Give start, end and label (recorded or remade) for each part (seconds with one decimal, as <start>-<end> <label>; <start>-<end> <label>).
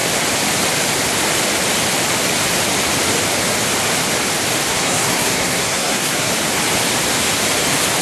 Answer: 0.0-4.7 recorded; 4.7-6.3 remade; 6.3-8.0 recorded